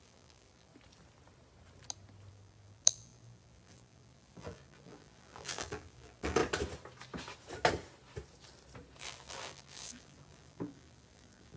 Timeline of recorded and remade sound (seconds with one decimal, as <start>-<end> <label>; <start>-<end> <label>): 0.0-0.7 remade; 0.7-2.3 recorded; 2.3-6.4 remade; 6.4-9.0 recorded; 9.0-11.6 remade